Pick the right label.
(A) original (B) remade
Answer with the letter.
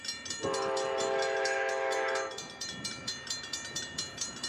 B